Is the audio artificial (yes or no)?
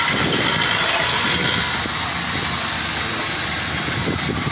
no